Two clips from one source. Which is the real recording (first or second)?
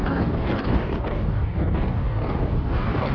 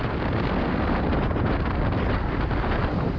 second